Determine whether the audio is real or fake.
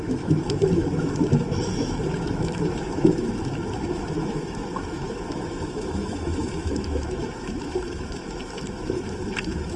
fake